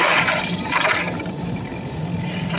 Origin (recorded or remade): remade